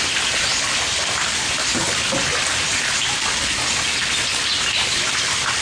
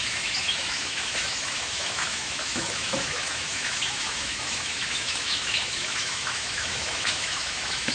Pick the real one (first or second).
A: first